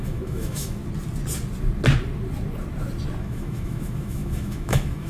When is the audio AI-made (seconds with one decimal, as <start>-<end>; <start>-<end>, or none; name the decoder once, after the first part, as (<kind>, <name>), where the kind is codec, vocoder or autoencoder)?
0.0-0.8 (autoencoder, DAC-VAE); 3.2-5.1